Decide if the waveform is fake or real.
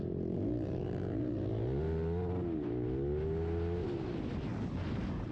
real